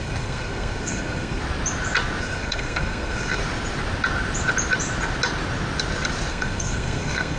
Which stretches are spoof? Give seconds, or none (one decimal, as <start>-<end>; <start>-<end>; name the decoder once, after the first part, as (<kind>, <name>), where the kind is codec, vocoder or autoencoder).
0.0-1.4 (codec, SNAC); 2.2-3.4; 6.3-7.4